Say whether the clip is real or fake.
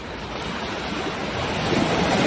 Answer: real